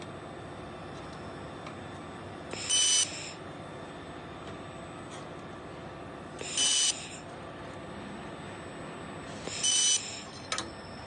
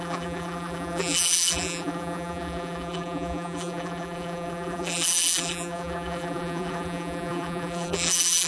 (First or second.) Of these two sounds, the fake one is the second